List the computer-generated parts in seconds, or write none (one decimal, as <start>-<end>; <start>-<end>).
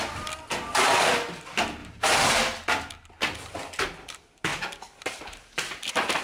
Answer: 1.8-2.3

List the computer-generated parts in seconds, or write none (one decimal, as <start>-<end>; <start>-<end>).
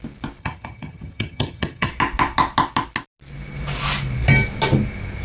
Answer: 0.4-1.9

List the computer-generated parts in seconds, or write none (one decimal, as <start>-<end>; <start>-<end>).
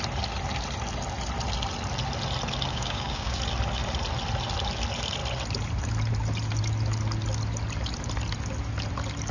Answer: 2.7-3.4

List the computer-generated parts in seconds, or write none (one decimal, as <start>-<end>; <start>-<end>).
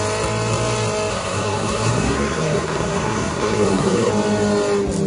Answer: 1.1-4.1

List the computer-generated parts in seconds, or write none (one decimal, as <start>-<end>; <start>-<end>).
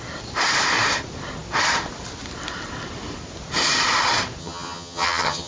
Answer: 4.4-5.5